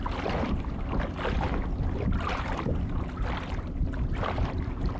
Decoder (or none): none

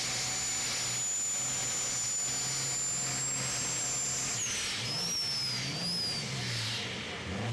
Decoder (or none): none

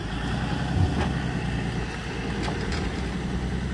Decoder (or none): none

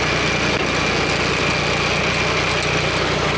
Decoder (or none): none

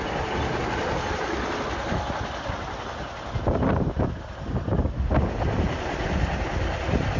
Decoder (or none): none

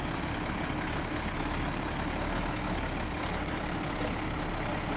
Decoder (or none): none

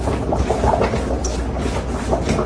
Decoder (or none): none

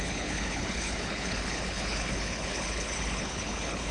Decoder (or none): codec, HILCodec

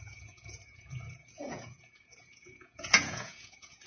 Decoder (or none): vocoder, Vocos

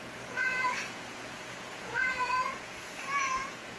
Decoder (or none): vocoder, Vocos